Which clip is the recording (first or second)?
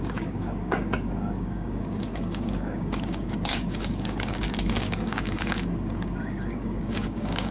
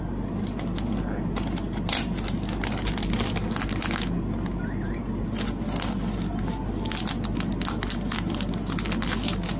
second